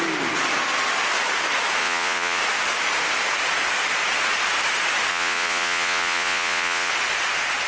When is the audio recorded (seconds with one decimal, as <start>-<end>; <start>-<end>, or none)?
0.0-1.8; 2.4-5.1; 6.9-7.7